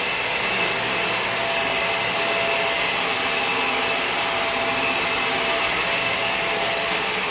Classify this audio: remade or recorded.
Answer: recorded